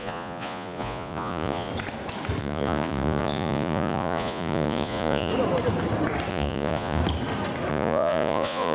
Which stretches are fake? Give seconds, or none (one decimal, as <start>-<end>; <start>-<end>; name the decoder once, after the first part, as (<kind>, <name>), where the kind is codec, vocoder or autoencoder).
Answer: 0.0-1.7 (vocoder, Vocos); 2.4-5.3; 6.3-7.0; 7.7-8.7